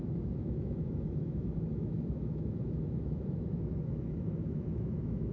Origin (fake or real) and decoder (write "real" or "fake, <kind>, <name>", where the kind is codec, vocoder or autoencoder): fake, autoencoder, DAC-VAE